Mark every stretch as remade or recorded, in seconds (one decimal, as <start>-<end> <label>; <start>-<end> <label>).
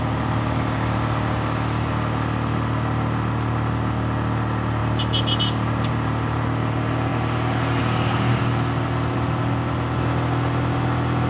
0.0-11.3 recorded